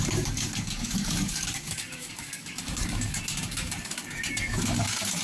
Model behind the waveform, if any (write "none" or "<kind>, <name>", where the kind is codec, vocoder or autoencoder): codec, DAC